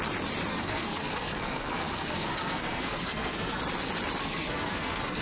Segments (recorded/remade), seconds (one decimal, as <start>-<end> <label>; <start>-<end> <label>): 0.0-0.5 recorded; 0.5-3.6 remade; 3.6-4.2 recorded; 4.2-5.2 remade

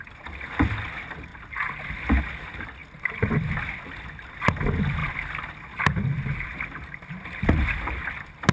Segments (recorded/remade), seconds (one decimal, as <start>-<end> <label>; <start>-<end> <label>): 0.0-8.5 recorded

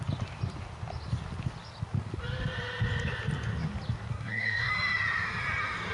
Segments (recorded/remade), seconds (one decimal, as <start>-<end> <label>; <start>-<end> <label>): 0.0-4.1 recorded; 4.1-4.7 remade; 4.7-5.9 recorded

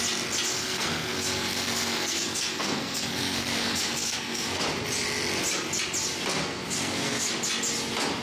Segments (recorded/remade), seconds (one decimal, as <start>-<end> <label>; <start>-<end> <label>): 0.0-0.5 recorded; 0.5-4.6 remade; 4.6-6.3 recorded; 6.3-7.3 remade; 7.3-8.2 recorded

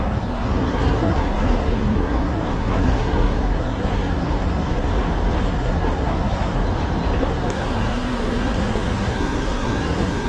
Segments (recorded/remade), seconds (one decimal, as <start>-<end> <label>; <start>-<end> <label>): 0.0-4.9 remade; 4.9-5.4 recorded; 5.4-6.6 remade; 6.6-7.2 recorded; 7.2-10.3 remade

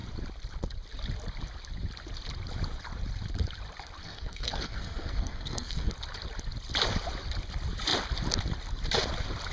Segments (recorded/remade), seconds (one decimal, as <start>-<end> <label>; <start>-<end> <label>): 0.0-4.0 recorded; 4.0-5.9 remade; 5.9-9.5 recorded